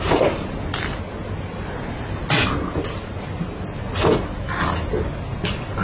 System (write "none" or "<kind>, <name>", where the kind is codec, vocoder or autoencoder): none